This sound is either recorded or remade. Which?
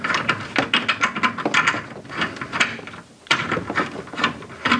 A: recorded